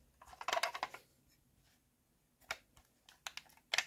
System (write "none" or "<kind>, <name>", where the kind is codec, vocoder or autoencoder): none